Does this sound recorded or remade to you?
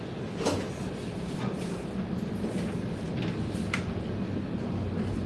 recorded